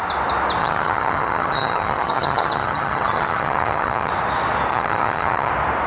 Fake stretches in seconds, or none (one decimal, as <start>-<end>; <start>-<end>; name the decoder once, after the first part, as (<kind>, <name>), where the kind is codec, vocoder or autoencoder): 0.6-4.1 (vocoder, HiFi-GAN); 4.7-5.5